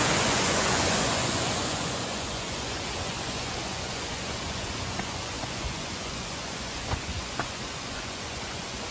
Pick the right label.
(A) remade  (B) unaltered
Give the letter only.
A